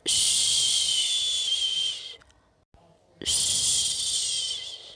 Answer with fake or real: real